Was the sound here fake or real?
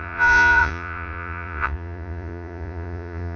fake